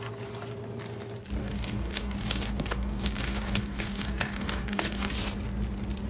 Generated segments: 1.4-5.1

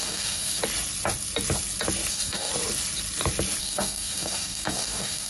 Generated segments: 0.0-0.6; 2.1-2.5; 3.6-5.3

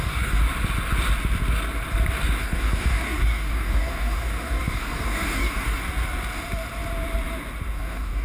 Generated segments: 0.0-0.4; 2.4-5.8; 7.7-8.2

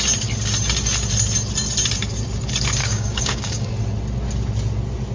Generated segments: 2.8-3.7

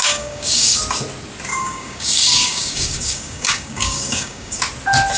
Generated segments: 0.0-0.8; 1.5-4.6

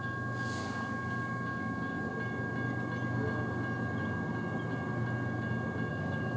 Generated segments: 0.0-2.1; 5.9-6.4